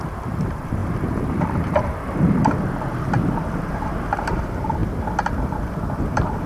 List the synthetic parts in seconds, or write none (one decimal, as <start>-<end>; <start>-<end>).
0.0-4.8; 6.0-6.5

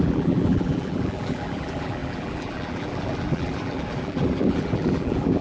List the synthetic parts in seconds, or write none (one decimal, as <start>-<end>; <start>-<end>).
0.0-5.4

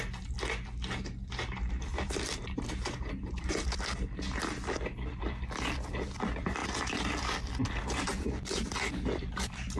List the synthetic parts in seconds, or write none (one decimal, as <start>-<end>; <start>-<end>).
1.9-3.5